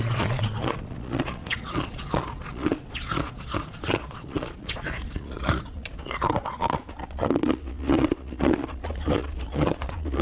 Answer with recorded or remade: remade